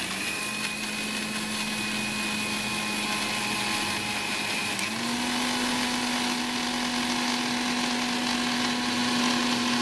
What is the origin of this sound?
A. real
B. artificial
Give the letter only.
A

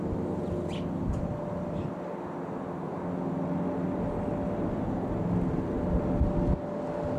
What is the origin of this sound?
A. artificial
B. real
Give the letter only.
B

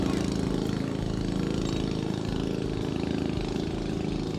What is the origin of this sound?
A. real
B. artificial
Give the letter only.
A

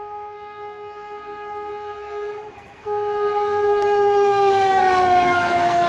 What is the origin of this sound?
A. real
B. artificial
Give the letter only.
B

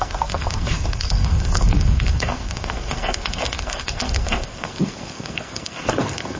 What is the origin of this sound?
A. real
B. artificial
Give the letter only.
B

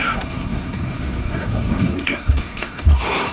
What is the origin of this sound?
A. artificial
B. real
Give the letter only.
A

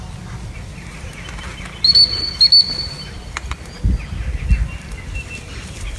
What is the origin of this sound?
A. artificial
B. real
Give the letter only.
B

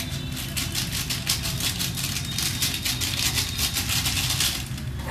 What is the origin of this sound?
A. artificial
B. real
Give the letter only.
B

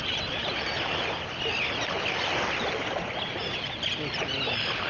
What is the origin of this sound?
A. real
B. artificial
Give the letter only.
A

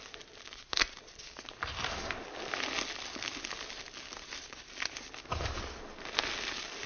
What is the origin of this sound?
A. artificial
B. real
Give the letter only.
B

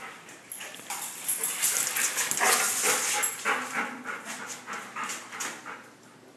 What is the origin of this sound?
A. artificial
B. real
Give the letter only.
B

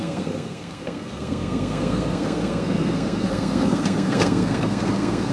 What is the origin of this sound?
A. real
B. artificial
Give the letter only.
B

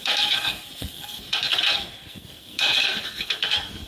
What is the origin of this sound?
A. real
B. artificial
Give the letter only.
B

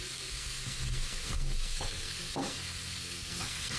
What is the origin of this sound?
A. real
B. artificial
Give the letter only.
B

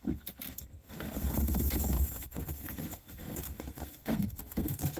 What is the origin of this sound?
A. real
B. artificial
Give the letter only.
B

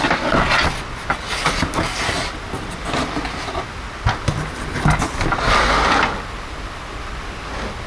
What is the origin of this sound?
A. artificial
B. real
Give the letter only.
B